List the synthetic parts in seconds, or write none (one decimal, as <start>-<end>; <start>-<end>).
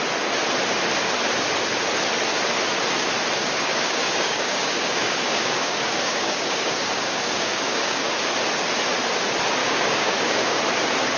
3.4-8.3; 9.6-10.6